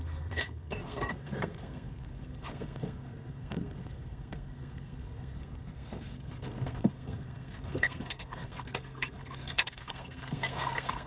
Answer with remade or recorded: remade